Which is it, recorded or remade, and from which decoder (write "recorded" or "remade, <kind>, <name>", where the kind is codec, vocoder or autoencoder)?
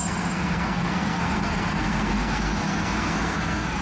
remade, codec, SNAC